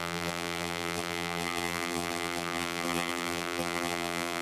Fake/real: fake